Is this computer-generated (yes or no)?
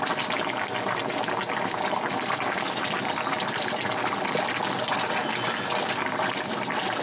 no